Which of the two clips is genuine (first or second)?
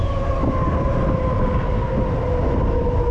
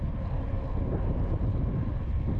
first